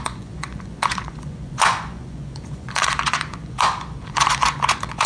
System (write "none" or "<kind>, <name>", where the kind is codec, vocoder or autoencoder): vocoder, Vocos